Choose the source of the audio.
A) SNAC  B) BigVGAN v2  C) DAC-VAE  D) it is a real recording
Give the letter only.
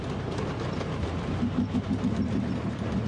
D